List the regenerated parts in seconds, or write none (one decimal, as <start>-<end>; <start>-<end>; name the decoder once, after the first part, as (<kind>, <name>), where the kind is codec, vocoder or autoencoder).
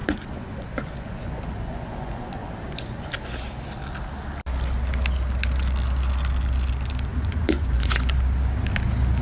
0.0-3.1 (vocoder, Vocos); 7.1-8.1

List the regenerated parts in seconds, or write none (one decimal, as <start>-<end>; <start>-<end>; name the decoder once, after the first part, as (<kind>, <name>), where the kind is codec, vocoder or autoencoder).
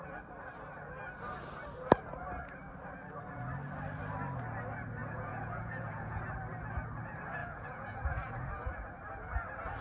5.0-6.2 (vocoder, Vocos); 7.4-8.7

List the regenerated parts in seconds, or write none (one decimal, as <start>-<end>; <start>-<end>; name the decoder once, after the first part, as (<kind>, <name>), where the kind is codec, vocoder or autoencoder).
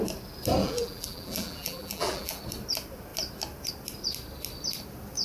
0.6-2.4 (vocoder, BigVGAN v2)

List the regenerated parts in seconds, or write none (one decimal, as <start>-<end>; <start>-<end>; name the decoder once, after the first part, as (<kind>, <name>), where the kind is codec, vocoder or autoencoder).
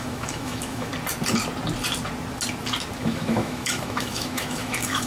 0.0-0.9 (autoencoder, DAC-VAE); 3.0-5.1